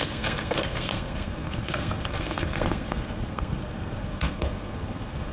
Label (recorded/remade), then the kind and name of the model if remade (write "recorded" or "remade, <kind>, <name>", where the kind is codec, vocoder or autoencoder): remade, codec, SNAC